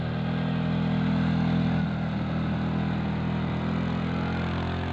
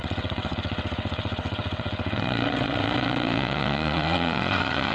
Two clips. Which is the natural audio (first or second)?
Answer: first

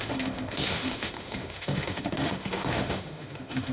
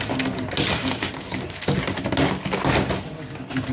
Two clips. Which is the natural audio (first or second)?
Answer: second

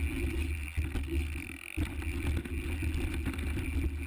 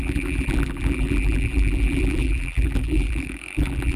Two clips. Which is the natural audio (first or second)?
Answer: first